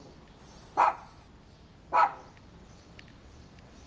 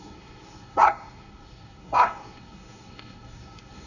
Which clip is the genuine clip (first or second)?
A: first